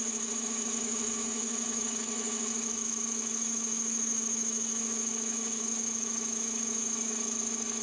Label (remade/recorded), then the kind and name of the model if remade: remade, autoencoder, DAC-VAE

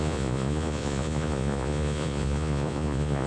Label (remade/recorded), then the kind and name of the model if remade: remade, vocoder, Vocos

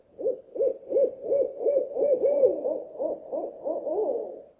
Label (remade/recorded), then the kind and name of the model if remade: remade, vocoder, BigVGAN v2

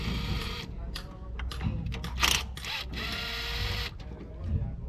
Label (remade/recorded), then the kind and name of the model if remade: recorded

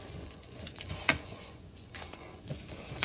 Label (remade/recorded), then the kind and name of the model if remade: remade, vocoder, Vocos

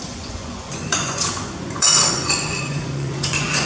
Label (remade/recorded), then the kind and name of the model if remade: remade, vocoder, Vocos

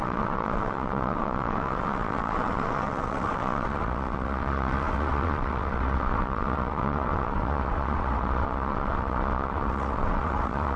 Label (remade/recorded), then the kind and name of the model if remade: remade, vocoder, WaveNeXt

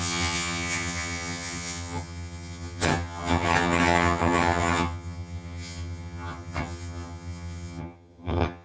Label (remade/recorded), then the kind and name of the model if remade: remade, vocoder, HiFi-GAN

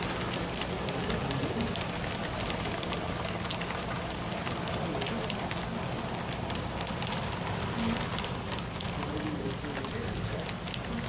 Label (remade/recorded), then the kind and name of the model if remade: recorded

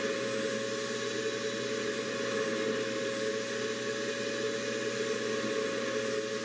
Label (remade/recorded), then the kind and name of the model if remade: recorded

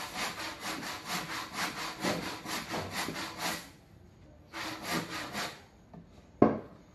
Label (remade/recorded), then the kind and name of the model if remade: recorded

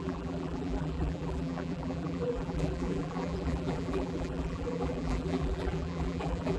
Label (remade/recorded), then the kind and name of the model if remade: remade, vocoder, BigVGAN v2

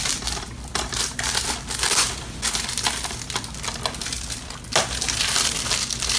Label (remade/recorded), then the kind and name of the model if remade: recorded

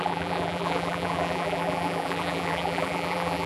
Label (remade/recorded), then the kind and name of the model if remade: remade, vocoder, BigVGAN v2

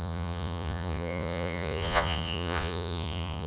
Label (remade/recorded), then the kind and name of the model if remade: remade, vocoder, Vocos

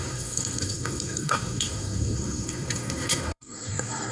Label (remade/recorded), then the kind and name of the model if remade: remade, codec, SNAC